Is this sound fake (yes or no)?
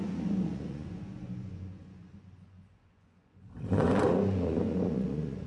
yes